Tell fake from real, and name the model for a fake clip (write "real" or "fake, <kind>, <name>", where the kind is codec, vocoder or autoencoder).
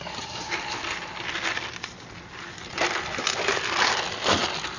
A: real